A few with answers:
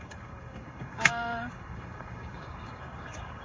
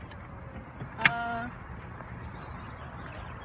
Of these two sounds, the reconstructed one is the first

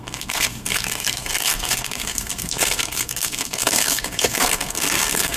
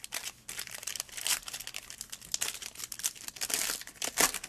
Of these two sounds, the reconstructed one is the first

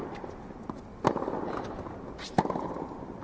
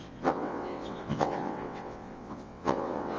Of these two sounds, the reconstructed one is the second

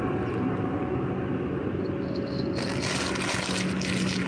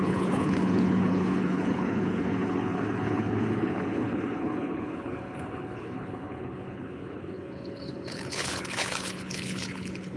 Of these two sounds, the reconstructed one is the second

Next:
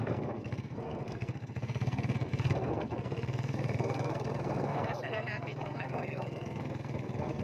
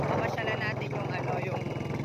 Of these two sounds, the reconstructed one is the first